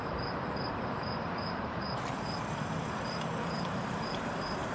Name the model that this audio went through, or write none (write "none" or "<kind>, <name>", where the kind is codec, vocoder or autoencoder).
vocoder, BigVGAN v2